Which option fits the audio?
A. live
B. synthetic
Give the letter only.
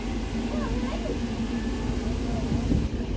A